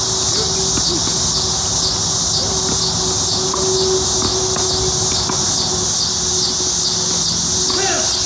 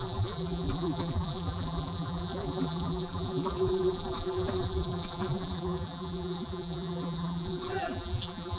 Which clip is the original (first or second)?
first